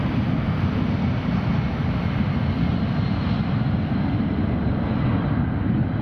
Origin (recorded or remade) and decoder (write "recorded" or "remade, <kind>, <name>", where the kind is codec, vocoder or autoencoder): recorded